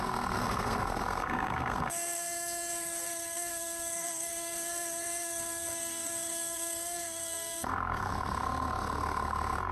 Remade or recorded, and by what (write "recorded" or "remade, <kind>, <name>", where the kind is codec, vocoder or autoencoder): remade, codec, SNAC